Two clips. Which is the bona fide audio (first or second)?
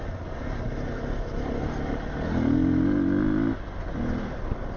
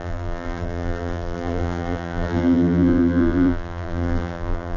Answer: first